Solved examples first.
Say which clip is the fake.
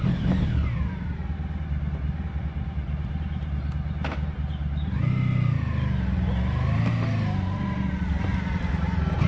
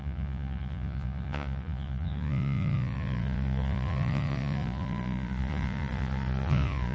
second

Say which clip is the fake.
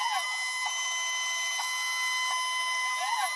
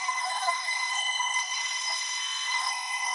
second